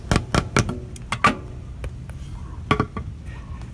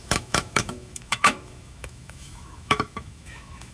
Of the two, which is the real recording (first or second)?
first